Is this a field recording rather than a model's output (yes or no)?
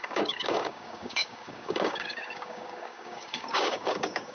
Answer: no